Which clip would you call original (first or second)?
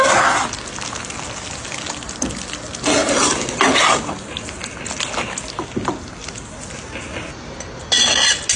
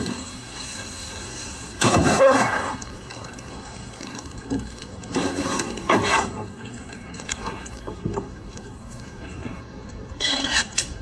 first